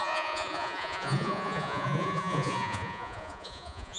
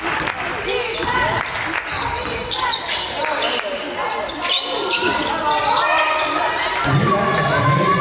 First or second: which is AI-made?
first